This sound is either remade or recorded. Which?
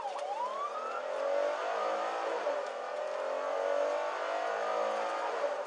recorded